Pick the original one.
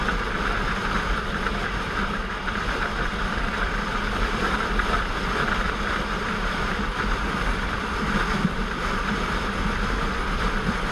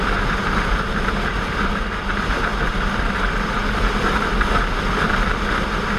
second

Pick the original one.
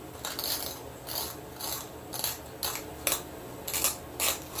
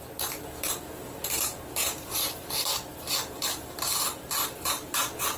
first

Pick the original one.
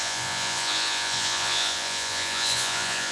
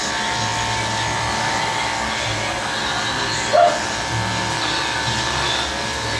second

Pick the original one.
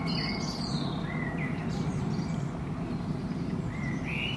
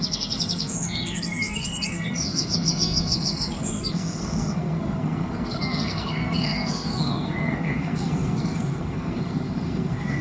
first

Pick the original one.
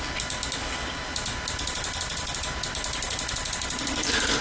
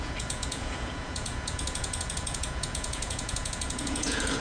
first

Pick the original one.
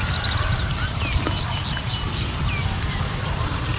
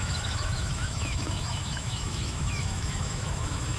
first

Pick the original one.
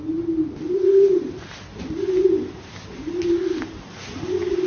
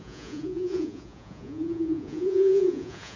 first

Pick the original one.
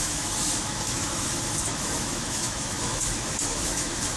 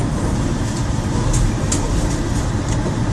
second